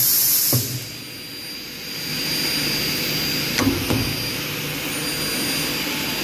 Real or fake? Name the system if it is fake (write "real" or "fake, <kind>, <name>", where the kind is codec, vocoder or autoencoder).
real